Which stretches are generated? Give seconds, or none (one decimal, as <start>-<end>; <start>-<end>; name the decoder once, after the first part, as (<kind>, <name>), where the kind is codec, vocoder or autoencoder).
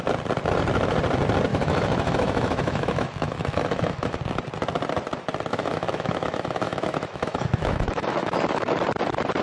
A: 1.5-4.2 (autoencoder, DAC-VAE); 5.5-8.7